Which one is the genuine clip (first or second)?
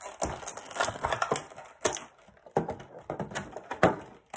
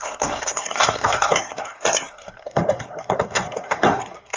first